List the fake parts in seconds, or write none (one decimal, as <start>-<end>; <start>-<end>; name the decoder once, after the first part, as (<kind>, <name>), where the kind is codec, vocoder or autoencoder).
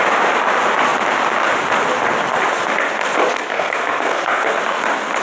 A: 3.5-4.6 (codec, SNAC)